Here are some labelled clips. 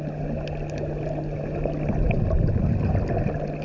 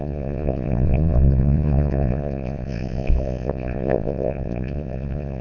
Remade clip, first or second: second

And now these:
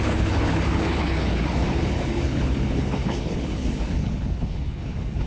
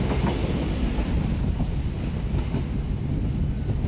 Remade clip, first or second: first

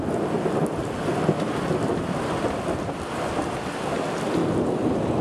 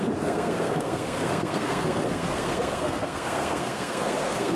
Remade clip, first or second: second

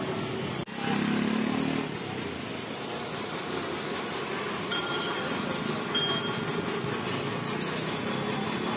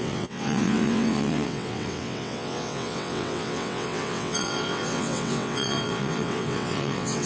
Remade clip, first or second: second